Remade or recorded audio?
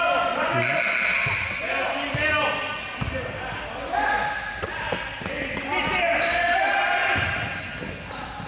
recorded